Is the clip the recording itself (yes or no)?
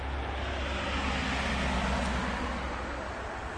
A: yes